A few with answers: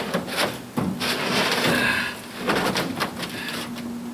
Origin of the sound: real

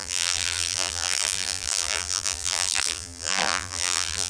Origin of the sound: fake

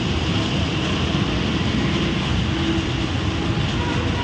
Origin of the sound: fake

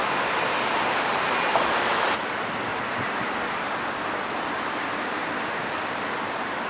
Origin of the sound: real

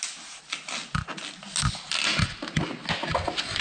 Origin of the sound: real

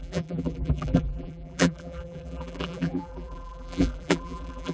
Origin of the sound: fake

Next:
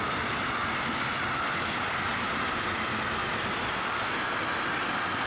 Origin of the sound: real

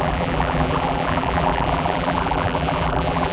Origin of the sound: fake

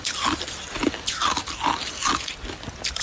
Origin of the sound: real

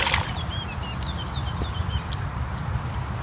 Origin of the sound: real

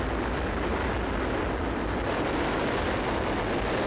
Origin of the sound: fake